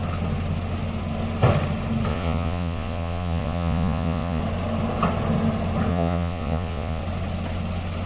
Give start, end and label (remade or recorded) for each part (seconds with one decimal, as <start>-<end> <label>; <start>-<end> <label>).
0.0-2.1 recorded; 2.1-4.4 remade; 4.4-5.9 recorded; 5.9-7.0 remade; 7.0-8.1 recorded